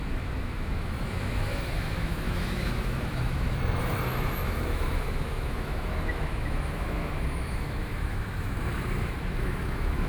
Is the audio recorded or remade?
remade